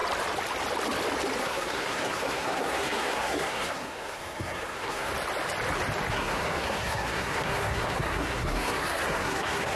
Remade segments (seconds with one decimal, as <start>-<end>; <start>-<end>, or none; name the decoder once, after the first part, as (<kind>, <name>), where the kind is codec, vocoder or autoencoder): 1.4-5.1 (codec, SNAC); 6.1-9.8

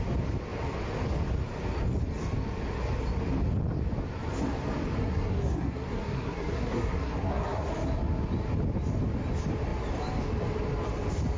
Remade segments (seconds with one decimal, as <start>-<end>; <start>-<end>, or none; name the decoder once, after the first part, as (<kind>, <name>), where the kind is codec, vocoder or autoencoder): 5.0-7.7 (codec, SNAC)

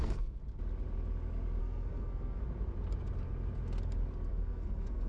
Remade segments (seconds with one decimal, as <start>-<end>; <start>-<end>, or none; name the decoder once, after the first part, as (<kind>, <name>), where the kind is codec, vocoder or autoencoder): 0.0-0.4 (codec, SNAC); 1.6-2.4; 4.3-5.1

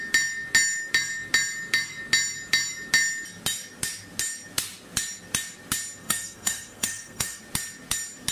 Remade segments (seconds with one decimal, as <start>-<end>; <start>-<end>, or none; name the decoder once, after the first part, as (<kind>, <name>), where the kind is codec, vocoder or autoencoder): 6.0-7.4 (codec, SNAC)

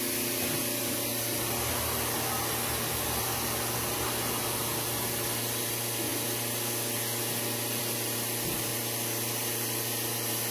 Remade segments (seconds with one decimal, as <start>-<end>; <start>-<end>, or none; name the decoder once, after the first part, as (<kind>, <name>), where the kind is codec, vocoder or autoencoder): none

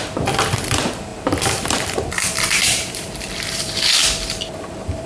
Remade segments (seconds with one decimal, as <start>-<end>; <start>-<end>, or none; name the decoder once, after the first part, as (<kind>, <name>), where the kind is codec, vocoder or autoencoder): 0.0-5.1 (vocoder, BigVGAN v2)

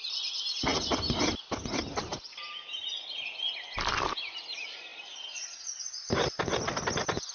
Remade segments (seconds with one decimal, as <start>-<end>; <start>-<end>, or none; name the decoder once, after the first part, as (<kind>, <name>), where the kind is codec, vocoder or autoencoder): none

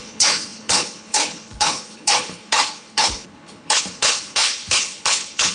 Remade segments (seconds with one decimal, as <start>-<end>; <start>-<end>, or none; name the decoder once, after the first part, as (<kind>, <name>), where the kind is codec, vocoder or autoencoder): 0.0-5.5 (codec, HILCodec)